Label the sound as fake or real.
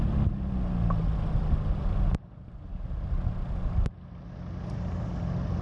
real